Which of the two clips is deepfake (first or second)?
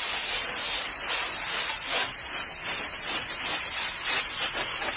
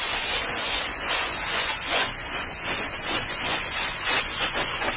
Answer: second